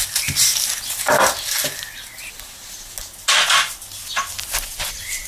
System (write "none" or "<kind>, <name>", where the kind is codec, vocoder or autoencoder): none